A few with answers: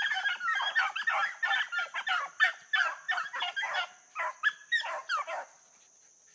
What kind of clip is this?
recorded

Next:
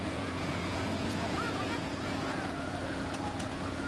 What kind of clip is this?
remade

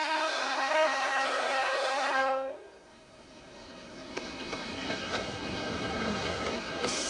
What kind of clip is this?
remade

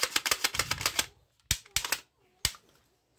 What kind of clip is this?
recorded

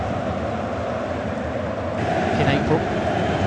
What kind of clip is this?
recorded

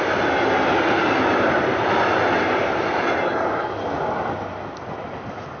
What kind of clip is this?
recorded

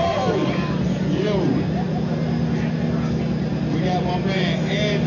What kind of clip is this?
recorded